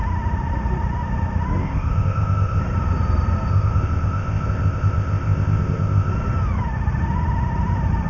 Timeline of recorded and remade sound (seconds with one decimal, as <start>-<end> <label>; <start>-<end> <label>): 0.0-1.6 recorded; 1.6-2.6 remade; 2.6-3.5 recorded; 3.5-6.1 remade; 6.1-8.1 recorded